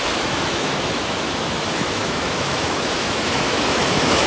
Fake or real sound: fake